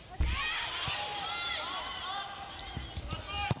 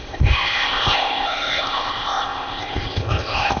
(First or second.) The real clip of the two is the first